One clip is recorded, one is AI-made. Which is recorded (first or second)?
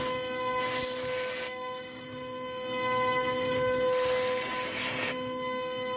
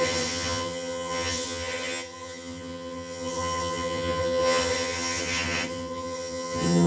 first